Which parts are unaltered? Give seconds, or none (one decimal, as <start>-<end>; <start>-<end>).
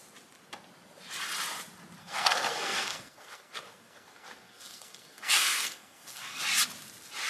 0.0-2.0; 6.4-7.3